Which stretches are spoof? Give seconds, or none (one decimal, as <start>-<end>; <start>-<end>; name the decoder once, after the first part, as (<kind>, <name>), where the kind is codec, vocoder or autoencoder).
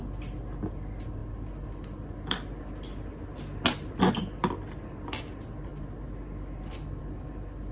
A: none